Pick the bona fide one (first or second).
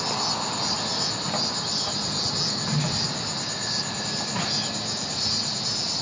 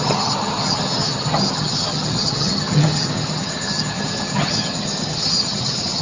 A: first